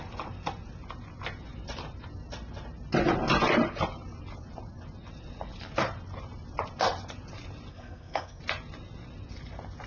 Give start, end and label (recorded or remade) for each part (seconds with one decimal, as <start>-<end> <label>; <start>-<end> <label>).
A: 0.0-7.7 recorded; 7.7-8.4 remade; 8.4-9.9 recorded